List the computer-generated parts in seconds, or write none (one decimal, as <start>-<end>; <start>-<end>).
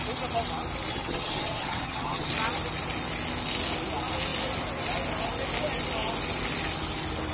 0.9-2.3